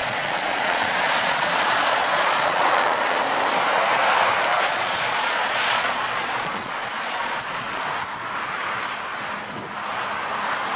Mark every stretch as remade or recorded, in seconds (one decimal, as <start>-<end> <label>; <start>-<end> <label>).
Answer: 0.0-3.2 remade; 3.2-4.5 recorded; 4.5-7.8 remade; 7.8-10.8 recorded